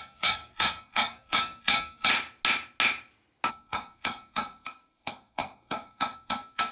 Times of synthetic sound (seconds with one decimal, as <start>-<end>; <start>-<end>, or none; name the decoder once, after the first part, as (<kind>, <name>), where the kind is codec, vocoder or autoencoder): 0.0-2.1 (codec, SNAC); 3.5-6.7